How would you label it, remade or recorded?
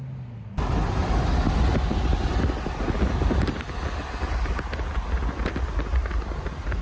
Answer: recorded